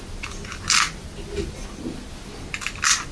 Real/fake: real